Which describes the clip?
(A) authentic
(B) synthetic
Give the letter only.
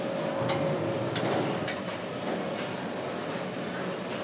A